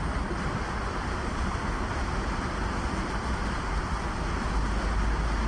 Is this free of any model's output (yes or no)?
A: yes